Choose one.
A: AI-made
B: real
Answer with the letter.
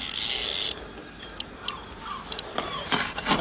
B